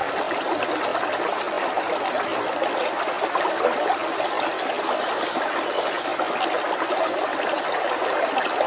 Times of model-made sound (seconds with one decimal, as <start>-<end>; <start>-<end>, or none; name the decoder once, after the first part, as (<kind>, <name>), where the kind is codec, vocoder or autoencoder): none